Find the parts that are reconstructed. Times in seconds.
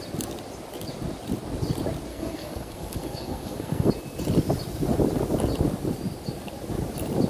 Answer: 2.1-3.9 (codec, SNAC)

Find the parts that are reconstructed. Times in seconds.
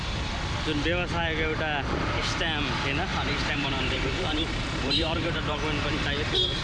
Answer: 3.1-5.6 (vocoder, BigVGAN v2)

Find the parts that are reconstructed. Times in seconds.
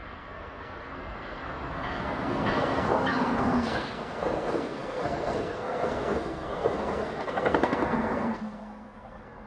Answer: 0.0-9.5 (codec, SNAC)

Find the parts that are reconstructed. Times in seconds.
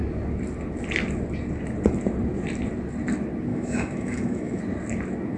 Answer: 3.5-4.6 (autoencoder, DAC-VAE)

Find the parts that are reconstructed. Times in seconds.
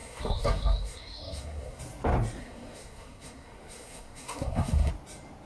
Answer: 0.0-1.8 (codec, SNAC); 2.4-4.9